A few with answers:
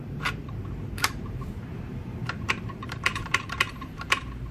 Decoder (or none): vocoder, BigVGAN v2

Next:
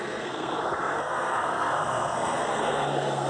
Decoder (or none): codec, SNAC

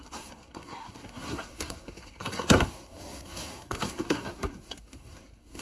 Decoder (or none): codec, SNAC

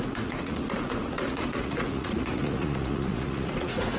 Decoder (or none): vocoder, Vocos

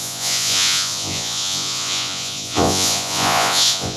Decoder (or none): vocoder, Vocos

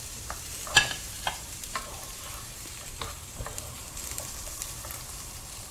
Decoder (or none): vocoder, BigVGAN v2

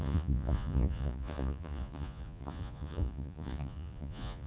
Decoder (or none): vocoder, Vocos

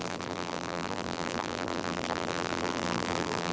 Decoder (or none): vocoder, BigVGAN v2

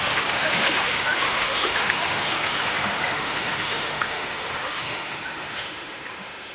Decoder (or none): autoencoder, DAC-VAE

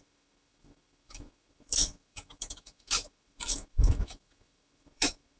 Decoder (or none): autoencoder, DAC-VAE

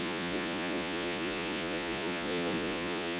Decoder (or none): vocoder, Vocos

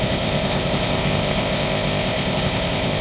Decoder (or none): codec, ZipCodec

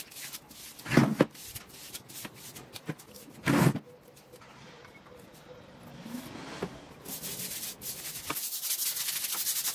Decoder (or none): none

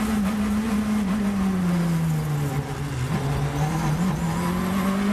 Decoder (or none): none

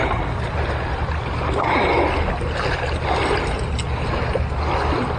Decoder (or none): none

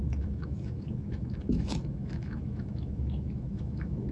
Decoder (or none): autoencoder, DAC-VAE